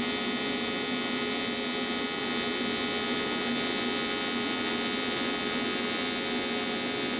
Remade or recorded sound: recorded